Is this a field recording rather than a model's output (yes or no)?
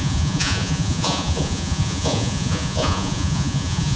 no